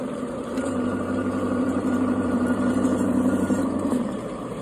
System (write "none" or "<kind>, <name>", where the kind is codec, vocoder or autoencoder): vocoder, BigVGAN v2